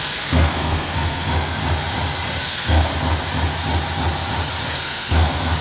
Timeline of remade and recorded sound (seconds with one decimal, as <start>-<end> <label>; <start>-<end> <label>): 0.0-1.6 remade; 1.6-2.4 recorded; 2.4-2.9 remade; 2.9-4.7 recorded; 4.7-5.6 remade